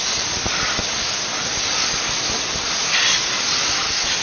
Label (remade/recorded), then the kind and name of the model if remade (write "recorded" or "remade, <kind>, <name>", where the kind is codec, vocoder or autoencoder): recorded